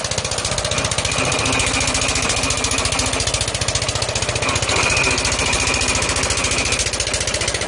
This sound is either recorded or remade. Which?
recorded